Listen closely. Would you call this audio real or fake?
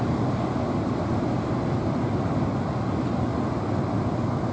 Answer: real